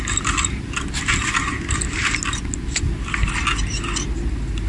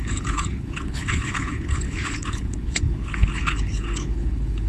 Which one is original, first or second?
first